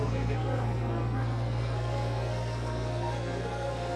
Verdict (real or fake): fake